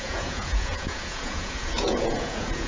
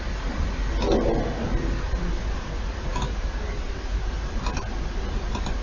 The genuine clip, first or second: second